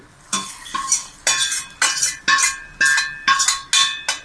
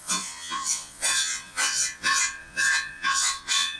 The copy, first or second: second